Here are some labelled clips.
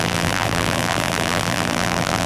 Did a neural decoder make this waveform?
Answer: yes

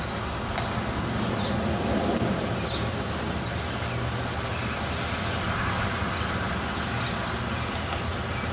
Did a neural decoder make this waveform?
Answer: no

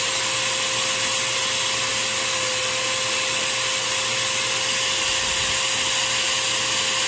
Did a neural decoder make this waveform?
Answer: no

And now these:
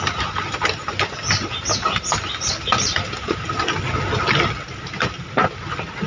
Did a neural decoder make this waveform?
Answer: no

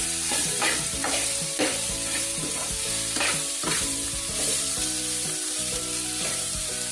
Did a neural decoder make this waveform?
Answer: yes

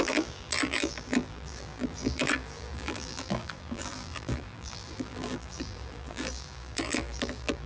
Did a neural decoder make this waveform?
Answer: yes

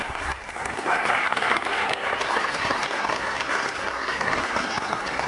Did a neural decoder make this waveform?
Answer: yes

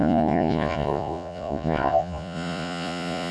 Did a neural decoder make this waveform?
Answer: yes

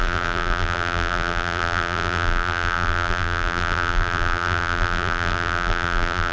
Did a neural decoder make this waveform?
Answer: yes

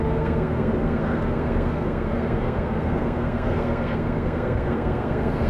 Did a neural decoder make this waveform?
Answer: yes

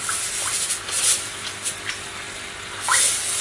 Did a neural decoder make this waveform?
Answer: no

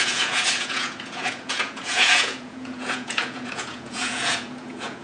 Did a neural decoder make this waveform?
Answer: yes